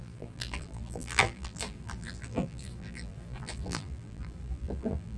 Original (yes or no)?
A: no